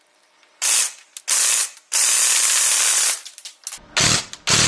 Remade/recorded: recorded